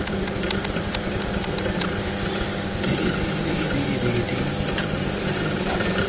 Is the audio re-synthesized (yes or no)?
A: yes